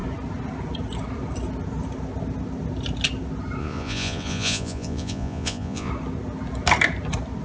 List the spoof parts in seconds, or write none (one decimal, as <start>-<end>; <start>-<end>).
3.6-5.9

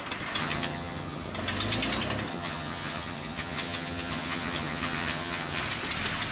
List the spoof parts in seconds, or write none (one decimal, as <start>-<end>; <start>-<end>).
0.4-1.3; 2.3-5.6

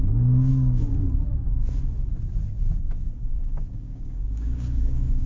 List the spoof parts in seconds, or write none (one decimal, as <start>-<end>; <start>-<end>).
0.0-0.5; 3.7-5.3

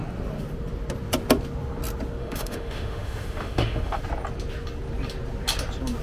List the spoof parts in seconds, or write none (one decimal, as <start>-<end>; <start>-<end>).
2.2-4.0

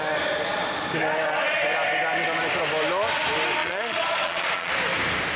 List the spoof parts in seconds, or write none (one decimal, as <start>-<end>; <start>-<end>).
3.6-4.7

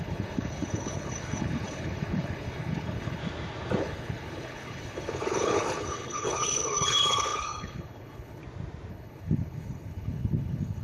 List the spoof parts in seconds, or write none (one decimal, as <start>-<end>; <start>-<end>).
0.0-3.2; 3.8-8.4; 8.9-10.8

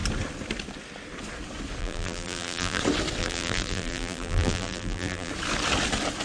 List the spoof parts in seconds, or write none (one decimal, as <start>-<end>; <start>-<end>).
1.8-2.8; 3.2-5.3

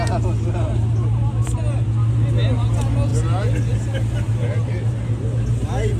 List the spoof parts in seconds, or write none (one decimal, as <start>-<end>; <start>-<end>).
none